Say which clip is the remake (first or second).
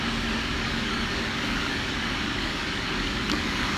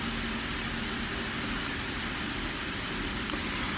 first